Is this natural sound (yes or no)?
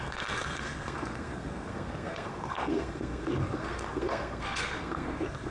no